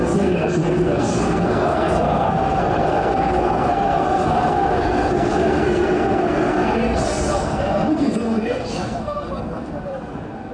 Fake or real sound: fake